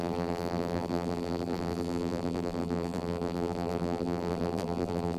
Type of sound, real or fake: fake